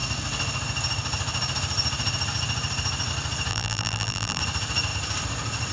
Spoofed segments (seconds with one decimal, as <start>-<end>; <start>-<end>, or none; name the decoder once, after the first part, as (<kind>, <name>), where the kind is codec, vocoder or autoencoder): 3.5-4.4 (vocoder, BigVGAN v2)

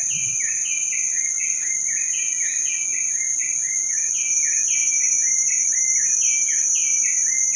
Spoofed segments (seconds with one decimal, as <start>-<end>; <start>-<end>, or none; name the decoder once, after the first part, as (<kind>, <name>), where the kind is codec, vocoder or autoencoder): 1.0-1.7 (vocoder, Vocos)

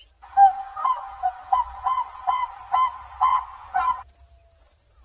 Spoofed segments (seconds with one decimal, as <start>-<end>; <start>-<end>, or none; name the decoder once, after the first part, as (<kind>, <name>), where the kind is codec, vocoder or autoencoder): 0.5-2.6 (vocoder, Vocos); 3.3-4.0

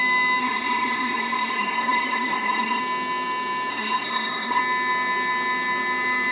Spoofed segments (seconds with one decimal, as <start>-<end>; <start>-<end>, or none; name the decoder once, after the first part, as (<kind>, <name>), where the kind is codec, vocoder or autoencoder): 0.4-2.8 (codec, SNAC); 3.7-4.6